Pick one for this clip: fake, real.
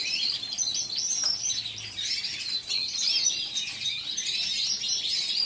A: real